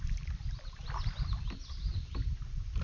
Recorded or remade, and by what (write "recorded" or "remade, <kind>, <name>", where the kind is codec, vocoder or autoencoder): remade, vocoder, BigVGAN v2